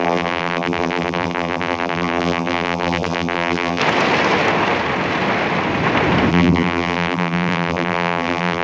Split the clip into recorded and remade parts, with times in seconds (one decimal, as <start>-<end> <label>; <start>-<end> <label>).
0.0-3.8 remade; 3.8-6.3 recorded; 6.3-8.6 remade